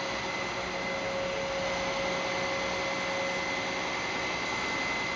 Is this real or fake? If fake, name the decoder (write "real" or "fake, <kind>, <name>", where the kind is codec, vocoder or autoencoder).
real